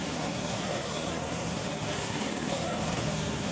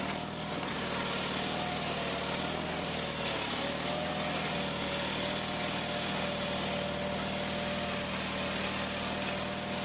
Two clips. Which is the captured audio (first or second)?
second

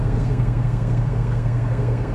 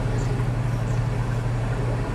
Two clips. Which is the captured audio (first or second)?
second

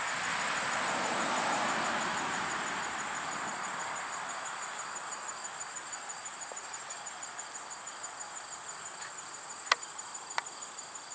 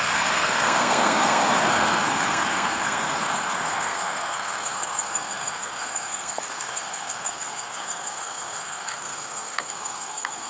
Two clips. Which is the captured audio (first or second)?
first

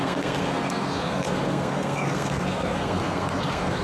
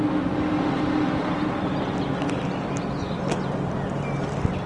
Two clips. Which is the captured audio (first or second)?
second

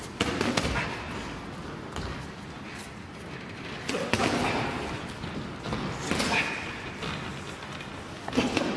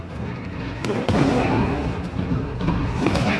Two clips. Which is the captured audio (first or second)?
first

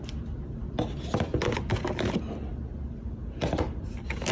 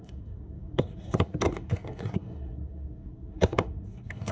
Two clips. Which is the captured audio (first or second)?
first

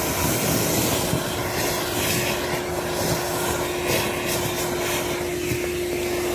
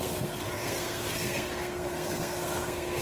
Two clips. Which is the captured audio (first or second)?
first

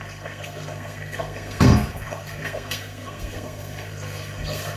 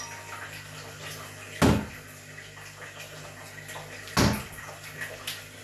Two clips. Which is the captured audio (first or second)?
second